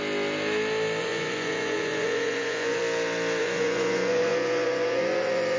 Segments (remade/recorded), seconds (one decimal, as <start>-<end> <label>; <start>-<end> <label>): 0.0-1.0 recorded; 1.0-2.8 remade; 2.8-3.4 recorded; 3.4-5.6 remade